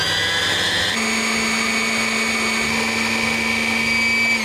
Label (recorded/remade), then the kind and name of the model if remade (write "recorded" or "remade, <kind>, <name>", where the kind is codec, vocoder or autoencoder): recorded